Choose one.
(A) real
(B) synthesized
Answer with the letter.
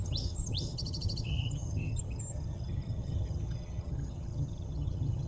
B